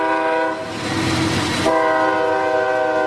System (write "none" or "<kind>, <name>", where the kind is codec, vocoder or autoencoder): none